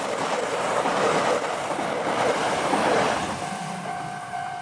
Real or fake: fake